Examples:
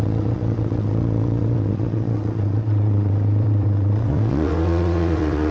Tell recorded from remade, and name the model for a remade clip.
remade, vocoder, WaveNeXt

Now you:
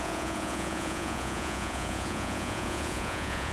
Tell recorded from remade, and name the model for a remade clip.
remade, vocoder, Vocos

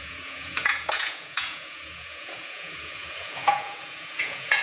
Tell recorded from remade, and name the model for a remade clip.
remade, vocoder, Vocos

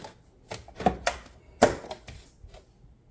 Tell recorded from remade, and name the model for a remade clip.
recorded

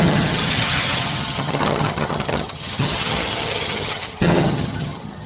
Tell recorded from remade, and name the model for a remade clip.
remade, vocoder, HiFi-GAN